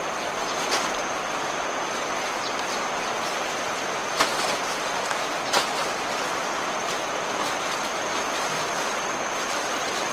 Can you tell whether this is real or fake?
real